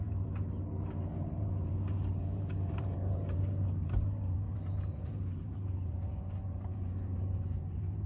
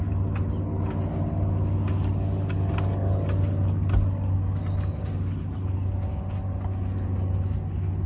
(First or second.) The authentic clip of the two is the second